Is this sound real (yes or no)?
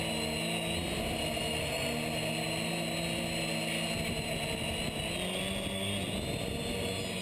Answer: yes